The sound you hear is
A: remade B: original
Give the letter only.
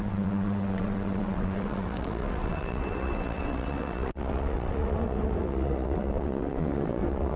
A